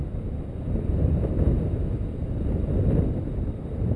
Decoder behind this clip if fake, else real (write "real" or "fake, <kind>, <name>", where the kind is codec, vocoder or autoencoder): fake, vocoder, BigVGAN v2